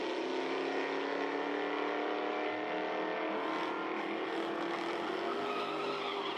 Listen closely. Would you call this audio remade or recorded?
recorded